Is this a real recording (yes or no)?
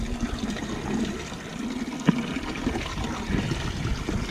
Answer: yes